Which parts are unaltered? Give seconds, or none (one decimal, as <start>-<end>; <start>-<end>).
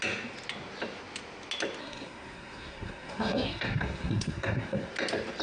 0.0-1.8; 4.9-5.4